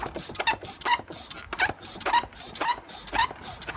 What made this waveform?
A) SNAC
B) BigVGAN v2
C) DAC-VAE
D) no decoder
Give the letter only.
D